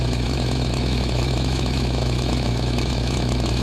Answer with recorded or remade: remade